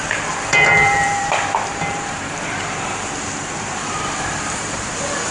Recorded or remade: remade